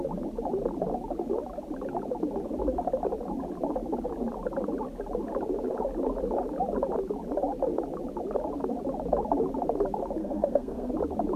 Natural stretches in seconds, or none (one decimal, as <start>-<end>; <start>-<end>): 0.0-10.2; 10.9-11.4